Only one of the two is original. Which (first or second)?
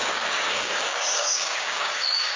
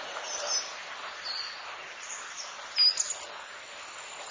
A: second